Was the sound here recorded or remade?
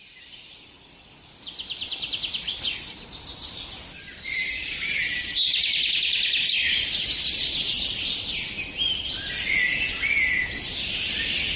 recorded